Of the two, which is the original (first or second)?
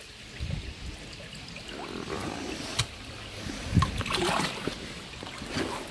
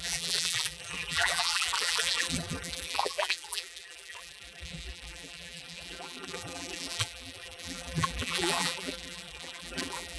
first